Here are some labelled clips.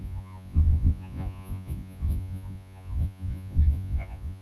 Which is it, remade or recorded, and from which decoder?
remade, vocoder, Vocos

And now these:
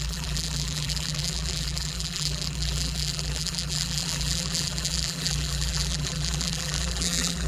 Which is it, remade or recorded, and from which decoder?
remade, vocoder, BigVGAN v2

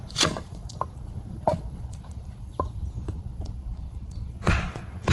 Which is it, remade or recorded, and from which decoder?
remade, vocoder, Vocos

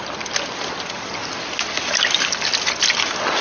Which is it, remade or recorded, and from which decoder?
recorded